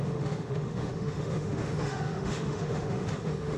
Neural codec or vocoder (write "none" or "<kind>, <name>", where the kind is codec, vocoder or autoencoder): autoencoder, DAC-VAE